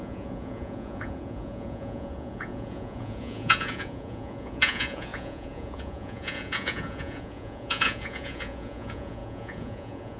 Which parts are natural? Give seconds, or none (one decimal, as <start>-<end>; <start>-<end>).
none